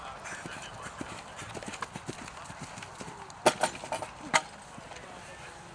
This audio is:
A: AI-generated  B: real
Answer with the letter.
B